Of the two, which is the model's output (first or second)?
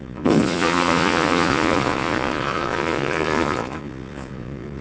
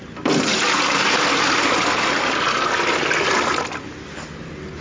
first